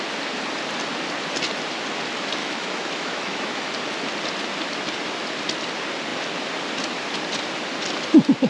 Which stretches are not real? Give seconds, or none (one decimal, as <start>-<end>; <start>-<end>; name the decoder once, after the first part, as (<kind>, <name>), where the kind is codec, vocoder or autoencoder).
2.4-3.7 (autoencoder, DAC-VAE)